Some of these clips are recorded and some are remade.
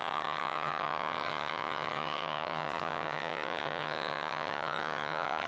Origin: remade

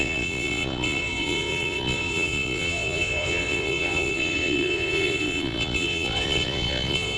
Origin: remade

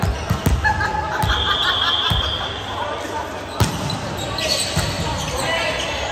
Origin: recorded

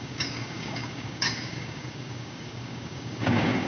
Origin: remade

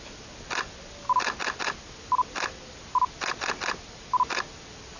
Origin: recorded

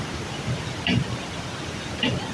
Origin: recorded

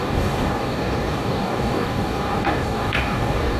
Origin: remade